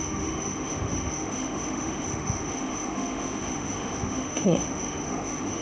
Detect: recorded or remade remade